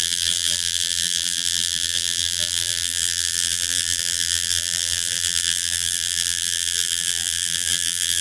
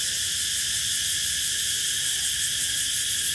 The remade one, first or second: first